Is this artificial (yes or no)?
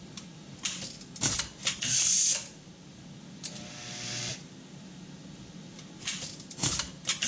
no